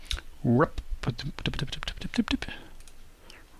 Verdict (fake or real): real